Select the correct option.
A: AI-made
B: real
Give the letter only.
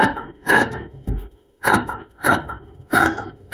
A